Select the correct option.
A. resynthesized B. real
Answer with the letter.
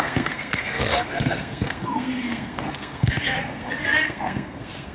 A